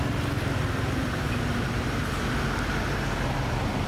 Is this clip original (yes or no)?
yes